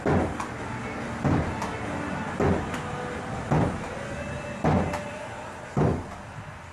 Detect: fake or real real